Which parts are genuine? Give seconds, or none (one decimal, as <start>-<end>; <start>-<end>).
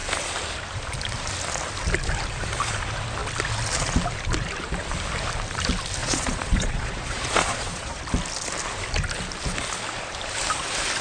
0.0-6.0; 8.0-11.0